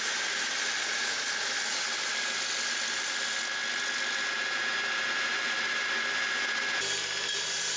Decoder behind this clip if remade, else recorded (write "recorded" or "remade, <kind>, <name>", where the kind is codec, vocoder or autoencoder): recorded